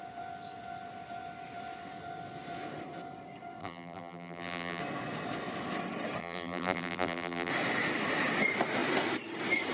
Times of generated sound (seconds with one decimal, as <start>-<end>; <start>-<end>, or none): 3.6-4.8; 6.2-7.5